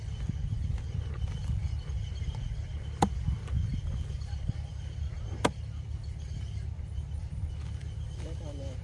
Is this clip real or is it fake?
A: real